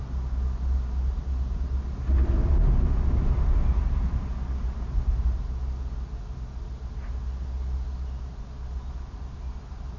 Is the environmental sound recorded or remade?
recorded